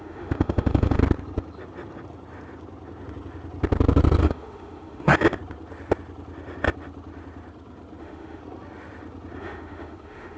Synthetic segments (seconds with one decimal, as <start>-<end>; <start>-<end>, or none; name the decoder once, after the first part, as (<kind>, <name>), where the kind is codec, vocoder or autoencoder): 0.0-1.0 (autoencoder, DAC-VAE); 4.2-5.1; 8.0-8.4; 9.4-10.4